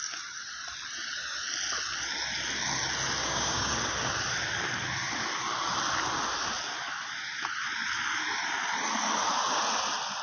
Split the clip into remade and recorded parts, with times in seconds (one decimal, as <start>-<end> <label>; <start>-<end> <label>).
0.0-3.2 recorded; 3.2-3.7 remade; 3.7-10.2 recorded